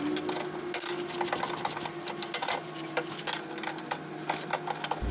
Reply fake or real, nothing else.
real